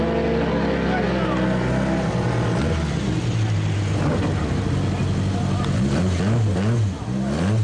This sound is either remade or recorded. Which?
recorded